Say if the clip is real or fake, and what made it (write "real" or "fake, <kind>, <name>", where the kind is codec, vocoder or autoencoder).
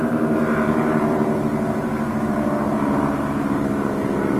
fake, vocoder, BigVGAN v2